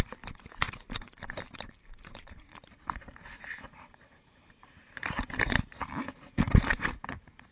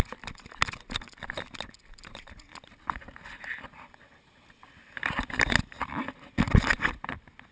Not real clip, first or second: first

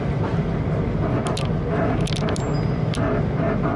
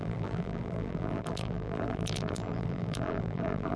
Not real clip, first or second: second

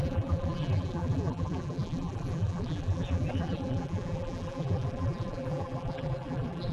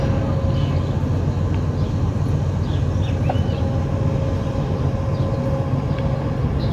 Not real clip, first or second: first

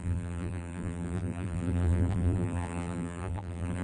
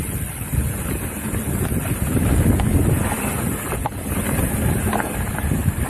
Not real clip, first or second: first